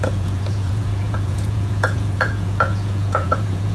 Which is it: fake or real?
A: fake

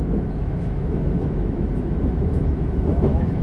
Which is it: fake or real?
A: fake